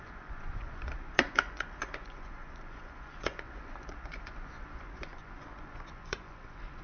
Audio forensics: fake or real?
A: fake